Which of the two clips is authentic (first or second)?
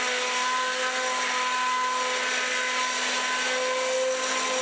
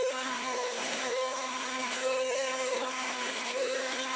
first